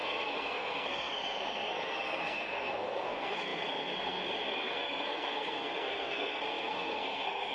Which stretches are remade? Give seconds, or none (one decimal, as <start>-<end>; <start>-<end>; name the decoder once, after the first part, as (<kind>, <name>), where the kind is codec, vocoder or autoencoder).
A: 0.0-7.5 (codec, SNAC)